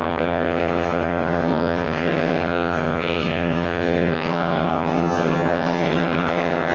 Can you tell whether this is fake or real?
fake